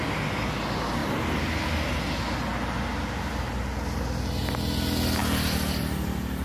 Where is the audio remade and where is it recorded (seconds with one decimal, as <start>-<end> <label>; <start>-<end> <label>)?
0.0-6.4 recorded